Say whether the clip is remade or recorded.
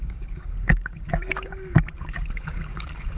remade